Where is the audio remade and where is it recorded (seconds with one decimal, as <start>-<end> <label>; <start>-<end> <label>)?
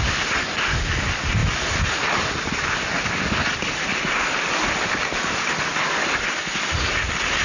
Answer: 0.0-7.4 recorded